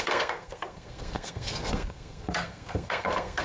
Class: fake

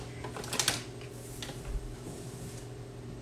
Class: real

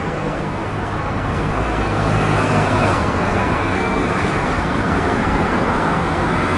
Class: fake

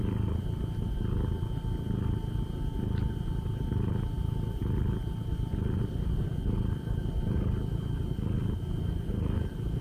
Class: real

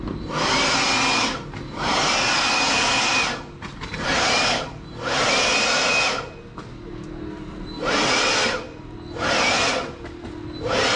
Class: real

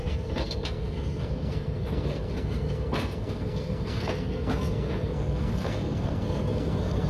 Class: fake